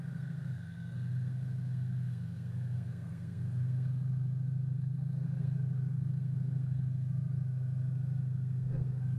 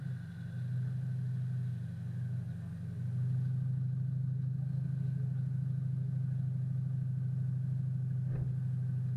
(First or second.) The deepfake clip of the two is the first